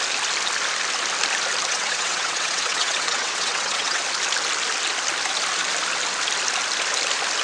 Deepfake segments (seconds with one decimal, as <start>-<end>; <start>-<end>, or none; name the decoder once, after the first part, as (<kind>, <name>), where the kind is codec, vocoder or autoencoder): 1.7-4.0 (vocoder, WaveNeXt)